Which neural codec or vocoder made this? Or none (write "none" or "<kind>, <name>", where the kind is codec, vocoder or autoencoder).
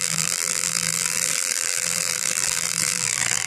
vocoder, BigVGAN v2